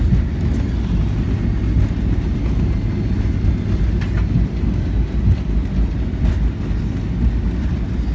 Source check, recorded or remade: recorded